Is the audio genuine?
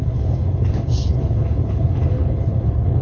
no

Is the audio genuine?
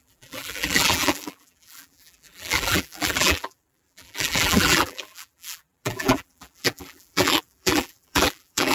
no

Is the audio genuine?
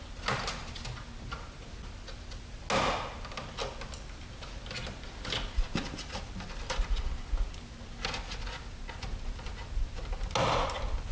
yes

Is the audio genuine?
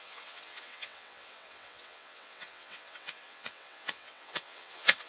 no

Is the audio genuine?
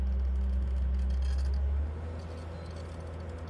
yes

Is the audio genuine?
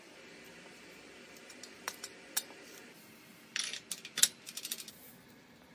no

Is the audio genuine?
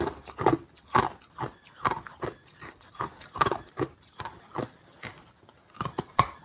yes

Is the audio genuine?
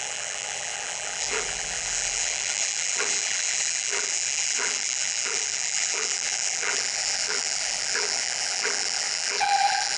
no